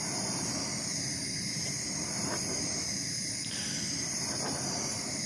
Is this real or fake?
fake